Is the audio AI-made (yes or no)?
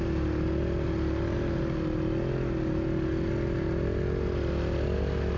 no